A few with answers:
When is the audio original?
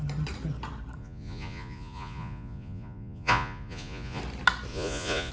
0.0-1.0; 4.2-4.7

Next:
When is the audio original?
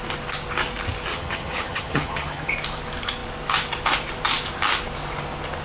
0.0-1.1; 2.5-5.6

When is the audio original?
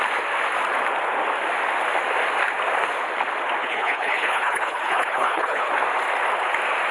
0.0-3.6; 5.7-6.9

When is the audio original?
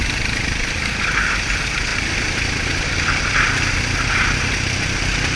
0.9-5.4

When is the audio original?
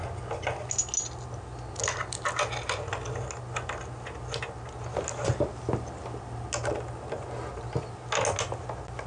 0.0-9.1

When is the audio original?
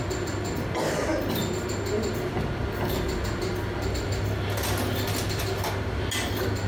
0.0-6.7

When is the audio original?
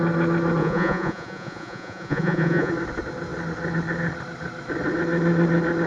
0.0-0.6; 2.7-5.9